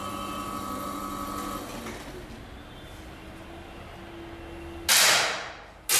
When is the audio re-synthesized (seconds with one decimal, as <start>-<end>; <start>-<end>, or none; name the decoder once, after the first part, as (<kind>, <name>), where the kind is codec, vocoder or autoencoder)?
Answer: none